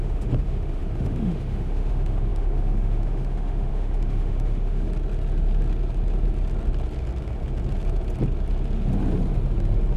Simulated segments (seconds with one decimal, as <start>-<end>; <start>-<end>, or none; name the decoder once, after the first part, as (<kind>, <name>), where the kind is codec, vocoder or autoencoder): 0.0-4.9 (autoencoder, DAC-VAE)